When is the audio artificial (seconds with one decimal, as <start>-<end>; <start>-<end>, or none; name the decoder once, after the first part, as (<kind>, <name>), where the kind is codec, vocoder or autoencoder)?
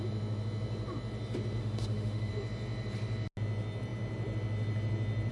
1.6-2.3 (autoencoder, DAC-VAE)